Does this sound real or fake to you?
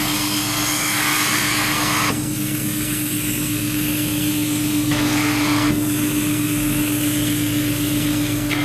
fake